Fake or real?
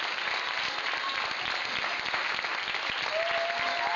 real